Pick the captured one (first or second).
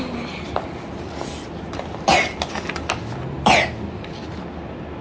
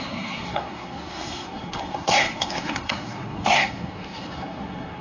first